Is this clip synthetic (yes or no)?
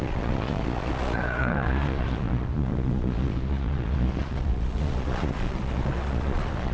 yes